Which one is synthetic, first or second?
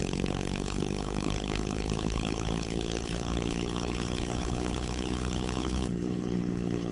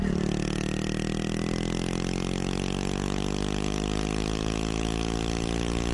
first